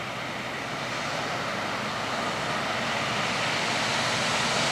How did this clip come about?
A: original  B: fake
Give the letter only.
A